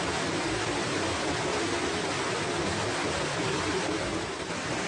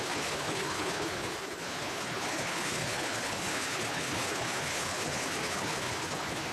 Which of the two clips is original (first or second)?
first